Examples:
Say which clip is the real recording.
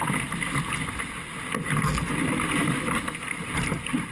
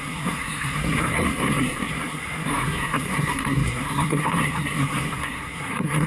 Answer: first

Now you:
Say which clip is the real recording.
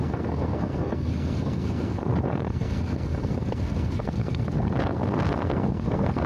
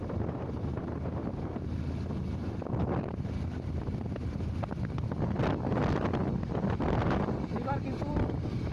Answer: second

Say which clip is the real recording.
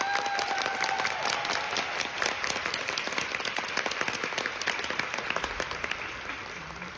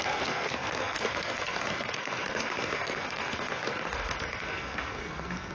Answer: first